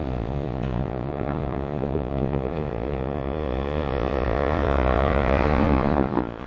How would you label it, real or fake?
fake